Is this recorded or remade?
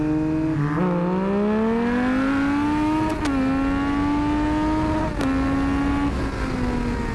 recorded